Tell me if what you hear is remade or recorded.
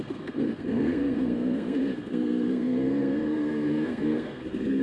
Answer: remade